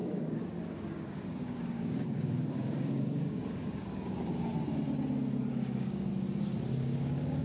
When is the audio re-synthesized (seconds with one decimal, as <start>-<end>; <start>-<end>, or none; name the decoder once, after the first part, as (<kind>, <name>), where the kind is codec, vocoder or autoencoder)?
0.0-4.5 (codec, DAC); 5.5-6.1; 6.7-7.4